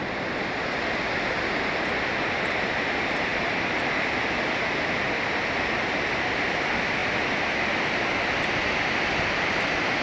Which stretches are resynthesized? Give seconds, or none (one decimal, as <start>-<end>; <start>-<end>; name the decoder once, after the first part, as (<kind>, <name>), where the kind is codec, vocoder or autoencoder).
none